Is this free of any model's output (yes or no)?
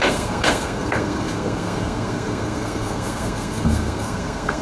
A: no